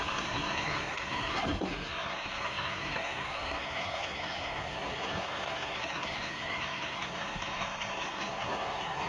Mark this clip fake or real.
fake